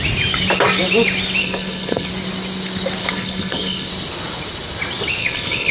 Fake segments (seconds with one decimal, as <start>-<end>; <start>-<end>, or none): 1.4-2.1; 3.0-3.9; 5.2-5.7